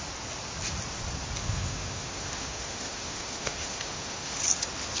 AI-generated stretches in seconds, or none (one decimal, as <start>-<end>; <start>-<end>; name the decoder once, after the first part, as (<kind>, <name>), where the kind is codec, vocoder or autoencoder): 1.4-4.4 (autoencoder, DAC-VAE)